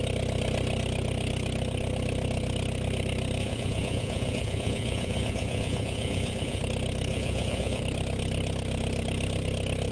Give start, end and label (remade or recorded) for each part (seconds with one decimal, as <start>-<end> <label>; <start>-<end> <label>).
0.0-3.4 recorded; 3.4-6.6 remade; 6.6-7.1 recorded; 7.1-7.8 remade; 7.8-9.9 recorded